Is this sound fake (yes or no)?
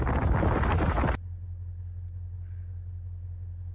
no